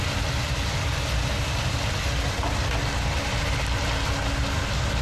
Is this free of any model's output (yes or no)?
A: yes